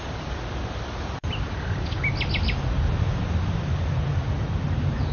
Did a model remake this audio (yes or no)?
no